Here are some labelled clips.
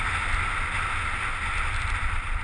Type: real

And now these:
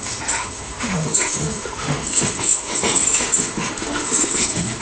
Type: fake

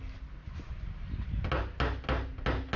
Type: real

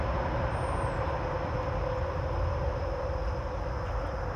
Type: real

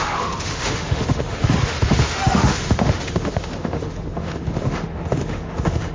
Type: fake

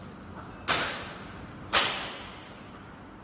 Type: real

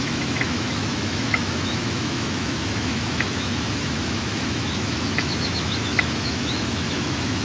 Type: fake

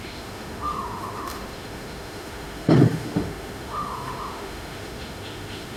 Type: fake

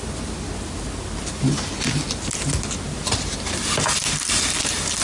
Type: real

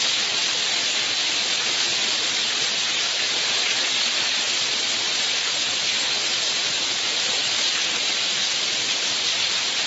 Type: real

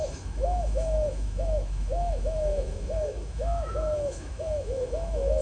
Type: fake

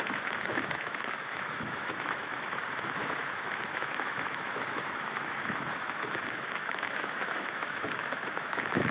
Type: fake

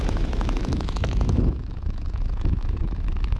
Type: fake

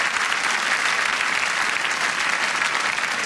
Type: real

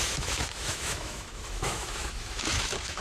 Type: fake